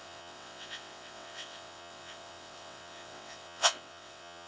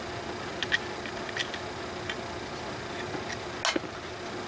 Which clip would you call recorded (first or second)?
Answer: second